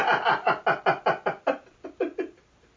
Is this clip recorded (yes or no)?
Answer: yes